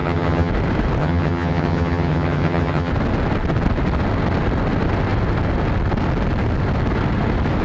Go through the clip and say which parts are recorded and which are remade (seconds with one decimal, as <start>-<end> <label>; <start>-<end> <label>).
0.0-0.5 remade; 0.5-1.0 recorded; 1.0-2.9 remade; 2.9-7.6 recorded